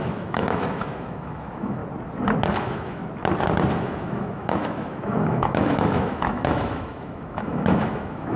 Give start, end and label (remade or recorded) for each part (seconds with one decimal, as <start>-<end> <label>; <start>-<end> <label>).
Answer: 0.0-1.8 remade; 1.8-2.5 recorded; 2.5-3.0 remade; 3.0-3.7 recorded; 3.7-8.4 remade